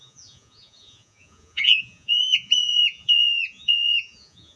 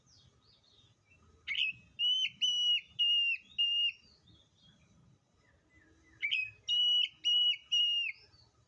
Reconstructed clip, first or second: first